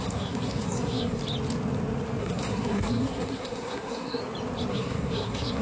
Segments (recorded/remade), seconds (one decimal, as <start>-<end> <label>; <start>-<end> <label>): 0.0-1.2 remade; 1.2-2.2 recorded; 2.2-4.2 remade; 4.2-4.7 recorded; 4.7-5.6 remade